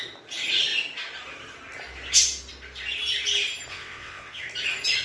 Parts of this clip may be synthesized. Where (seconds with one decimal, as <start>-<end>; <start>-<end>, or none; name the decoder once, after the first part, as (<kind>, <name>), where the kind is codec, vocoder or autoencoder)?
3.7-4.4 (vocoder, WaveNeXt)